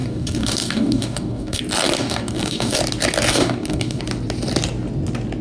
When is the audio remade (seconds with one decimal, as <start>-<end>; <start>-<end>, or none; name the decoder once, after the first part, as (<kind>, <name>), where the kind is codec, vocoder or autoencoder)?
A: 0.0-1.6 (codec, DAC); 2.0-2.8; 3.3-4.0